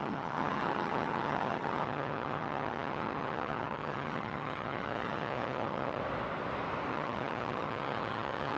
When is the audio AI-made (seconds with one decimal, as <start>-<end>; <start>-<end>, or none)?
0.0-6.0; 6.9-8.6